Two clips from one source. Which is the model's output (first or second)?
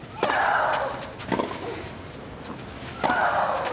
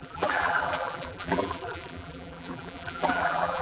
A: second